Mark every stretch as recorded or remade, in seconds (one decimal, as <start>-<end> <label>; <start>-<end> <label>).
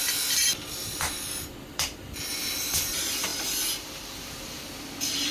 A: 0.0-2.4 recorded; 2.4-2.9 remade; 2.9-3.3 recorded; 3.3-4.8 remade; 4.8-5.3 recorded